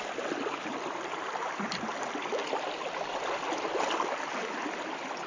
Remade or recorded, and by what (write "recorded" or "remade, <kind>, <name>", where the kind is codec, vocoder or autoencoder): recorded